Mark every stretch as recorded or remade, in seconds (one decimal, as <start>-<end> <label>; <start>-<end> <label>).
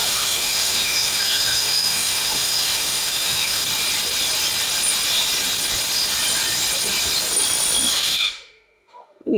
0.0-3.6 remade; 3.6-7.9 recorded; 7.9-9.4 remade